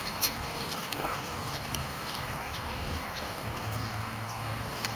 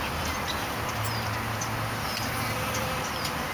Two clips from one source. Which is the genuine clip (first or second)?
second